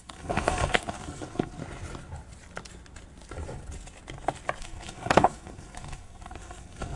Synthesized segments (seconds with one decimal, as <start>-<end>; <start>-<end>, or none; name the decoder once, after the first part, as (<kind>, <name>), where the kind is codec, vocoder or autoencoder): 0.0-1.6 (codec, SNAC); 4.6-7.0